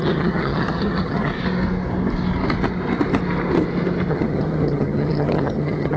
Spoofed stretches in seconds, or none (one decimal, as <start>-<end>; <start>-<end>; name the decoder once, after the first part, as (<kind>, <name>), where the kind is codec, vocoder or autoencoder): 0.0-1.3 (vocoder, HiFi-GAN); 4.1-6.0